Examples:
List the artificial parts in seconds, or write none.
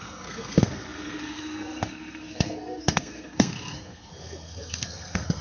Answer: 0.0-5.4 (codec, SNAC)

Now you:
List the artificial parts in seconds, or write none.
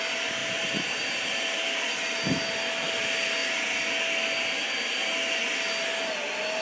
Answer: 0.4-1.9 (vocoder, BigVGAN v2)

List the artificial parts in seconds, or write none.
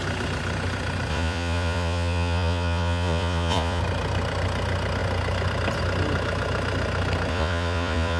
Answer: 1.1-3.8 (vocoder, Vocos); 7.3-8.2